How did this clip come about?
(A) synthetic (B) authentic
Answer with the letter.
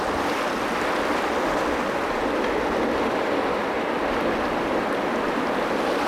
B